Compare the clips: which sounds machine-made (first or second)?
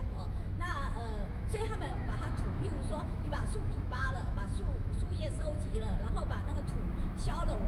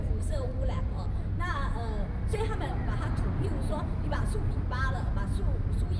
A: first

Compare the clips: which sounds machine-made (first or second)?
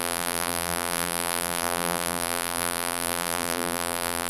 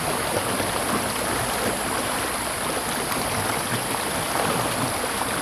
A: first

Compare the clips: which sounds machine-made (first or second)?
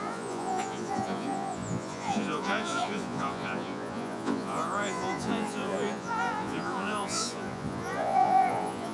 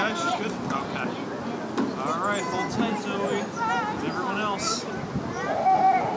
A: first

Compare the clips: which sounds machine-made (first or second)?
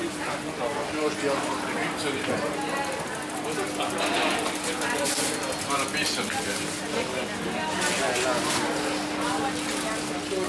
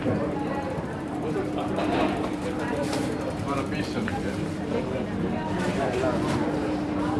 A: second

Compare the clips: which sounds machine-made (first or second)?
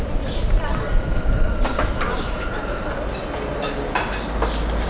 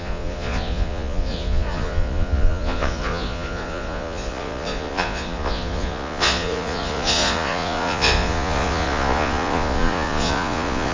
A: second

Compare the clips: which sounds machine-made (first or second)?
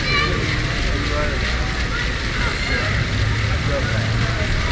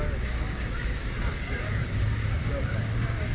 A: second